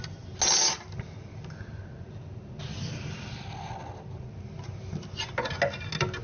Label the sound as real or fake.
real